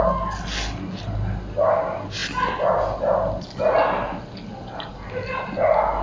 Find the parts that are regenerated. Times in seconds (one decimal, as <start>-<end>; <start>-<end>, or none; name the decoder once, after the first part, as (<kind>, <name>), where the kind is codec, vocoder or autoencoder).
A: none